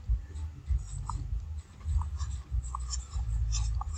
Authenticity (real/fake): real